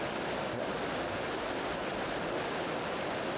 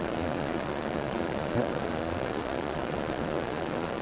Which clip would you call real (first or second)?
first